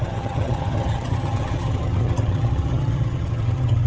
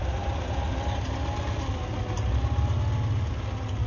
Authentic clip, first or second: second